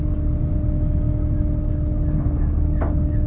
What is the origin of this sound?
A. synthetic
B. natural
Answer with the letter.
B